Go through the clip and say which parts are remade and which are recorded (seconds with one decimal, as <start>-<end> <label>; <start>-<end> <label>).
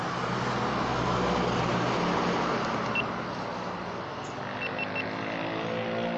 0.0-6.2 recorded